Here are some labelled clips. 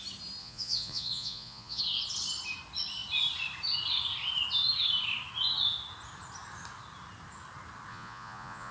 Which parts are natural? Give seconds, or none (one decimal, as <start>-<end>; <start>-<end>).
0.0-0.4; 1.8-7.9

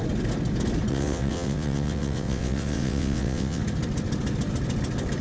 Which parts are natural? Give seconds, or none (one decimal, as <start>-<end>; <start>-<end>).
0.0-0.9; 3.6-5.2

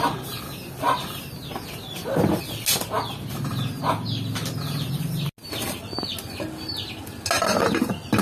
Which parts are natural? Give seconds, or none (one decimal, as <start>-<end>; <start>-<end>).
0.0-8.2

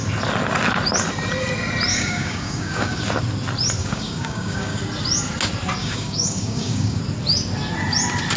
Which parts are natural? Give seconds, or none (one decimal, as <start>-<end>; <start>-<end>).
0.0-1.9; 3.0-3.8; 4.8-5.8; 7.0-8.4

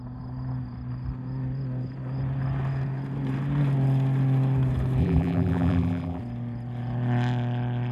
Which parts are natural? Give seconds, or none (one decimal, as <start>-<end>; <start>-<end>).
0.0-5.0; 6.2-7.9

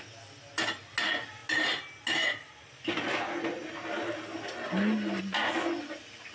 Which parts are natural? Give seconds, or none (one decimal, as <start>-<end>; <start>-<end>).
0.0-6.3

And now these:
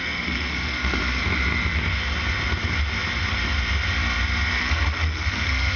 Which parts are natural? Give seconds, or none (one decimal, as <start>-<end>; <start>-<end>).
1.0-4.5